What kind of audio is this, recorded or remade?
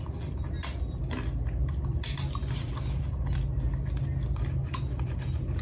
recorded